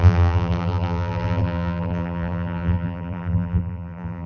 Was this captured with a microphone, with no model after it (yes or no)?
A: no